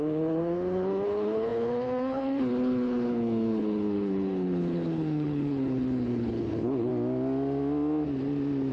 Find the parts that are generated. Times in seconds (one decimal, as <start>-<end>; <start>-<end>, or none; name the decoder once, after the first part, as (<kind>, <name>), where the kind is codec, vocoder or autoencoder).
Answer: 0.0-6.9 (codec, HILCodec)